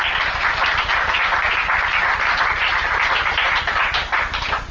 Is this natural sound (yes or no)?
yes